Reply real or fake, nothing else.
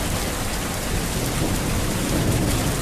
real